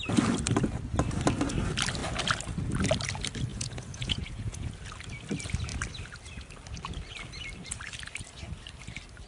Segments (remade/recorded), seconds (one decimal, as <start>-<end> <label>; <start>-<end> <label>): 0.0-3.5 recorded; 3.5-4.7 remade; 4.7-9.3 recorded